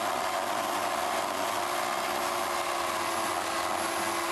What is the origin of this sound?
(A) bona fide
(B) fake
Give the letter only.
A